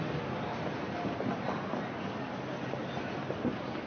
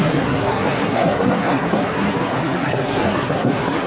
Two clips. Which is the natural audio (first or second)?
first